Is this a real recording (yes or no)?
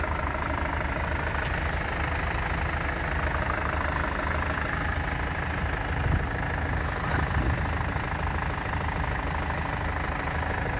yes